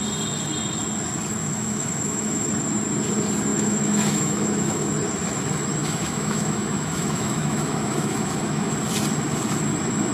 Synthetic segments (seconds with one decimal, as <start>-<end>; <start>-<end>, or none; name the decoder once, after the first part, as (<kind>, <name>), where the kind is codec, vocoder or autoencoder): 1.4-2.5 (autoencoder, DAC-VAE); 3.5-4.9; 5.8-8.7